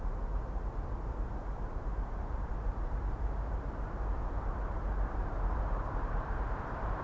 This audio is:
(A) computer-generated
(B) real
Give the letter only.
A